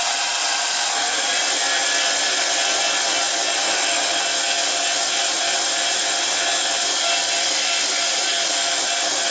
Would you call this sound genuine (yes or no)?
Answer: yes